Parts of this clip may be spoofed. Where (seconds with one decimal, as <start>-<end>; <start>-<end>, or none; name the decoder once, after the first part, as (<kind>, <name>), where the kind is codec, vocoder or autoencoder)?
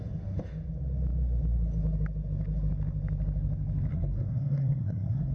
3.9-5.3 (codec, SNAC)